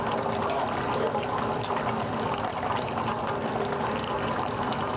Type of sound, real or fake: real